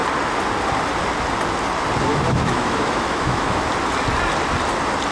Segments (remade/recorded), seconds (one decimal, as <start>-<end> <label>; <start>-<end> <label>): 0.0-2.1 recorded; 2.1-3.7 remade; 3.7-5.1 recorded